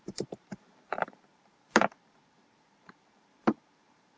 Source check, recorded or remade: remade